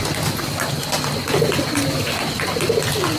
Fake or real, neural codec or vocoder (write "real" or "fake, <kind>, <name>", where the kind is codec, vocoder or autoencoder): real